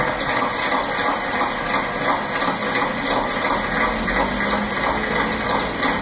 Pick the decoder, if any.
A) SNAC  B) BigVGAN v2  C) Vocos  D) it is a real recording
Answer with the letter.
D